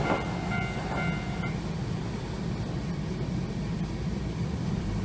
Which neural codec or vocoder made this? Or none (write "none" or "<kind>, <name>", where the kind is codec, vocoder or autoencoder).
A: vocoder, BigVGAN v2